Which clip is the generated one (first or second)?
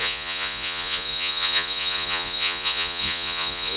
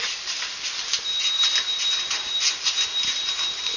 first